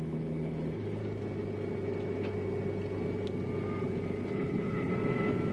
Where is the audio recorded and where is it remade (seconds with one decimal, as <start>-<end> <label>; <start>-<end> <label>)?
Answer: 0.0-1.0 remade; 1.0-4.3 recorded; 4.3-4.9 remade; 4.9-5.5 recorded